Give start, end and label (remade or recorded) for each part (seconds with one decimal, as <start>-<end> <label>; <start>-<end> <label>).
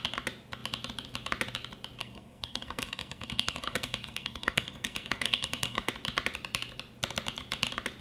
0.0-2.0 recorded; 2.0-5.9 remade; 5.9-8.0 recorded